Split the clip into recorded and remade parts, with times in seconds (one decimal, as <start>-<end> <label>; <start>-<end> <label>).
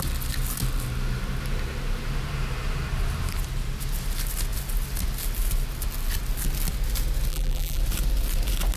0.0-7.3 recorded; 7.3-7.8 remade; 7.8-8.8 recorded